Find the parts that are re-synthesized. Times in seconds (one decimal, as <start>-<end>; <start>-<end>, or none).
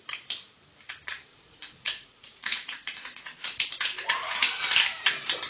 1.3-4.6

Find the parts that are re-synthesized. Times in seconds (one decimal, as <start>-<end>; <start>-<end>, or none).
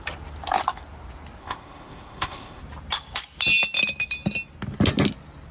1.4-2.6